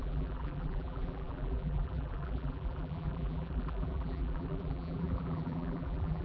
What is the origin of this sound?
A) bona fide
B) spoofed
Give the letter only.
B